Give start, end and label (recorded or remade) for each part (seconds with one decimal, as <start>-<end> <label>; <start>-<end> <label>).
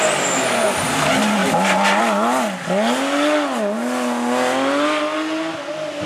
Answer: 0.0-6.1 recorded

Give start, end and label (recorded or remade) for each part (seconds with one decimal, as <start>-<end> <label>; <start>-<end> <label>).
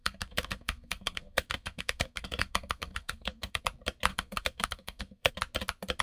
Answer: 0.0-3.6 remade; 3.6-4.1 recorded; 4.1-5.3 remade; 5.3-6.0 recorded